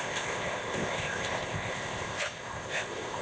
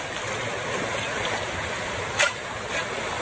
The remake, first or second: first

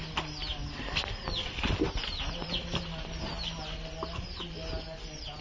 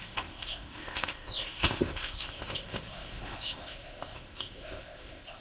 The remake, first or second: second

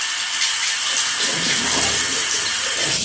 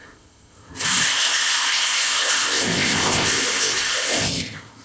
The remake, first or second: second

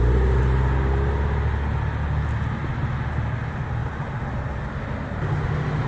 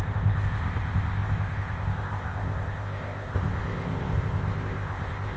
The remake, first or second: second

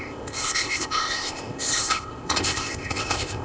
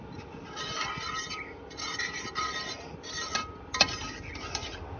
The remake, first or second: first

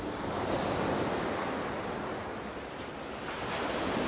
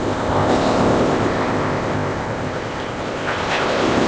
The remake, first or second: second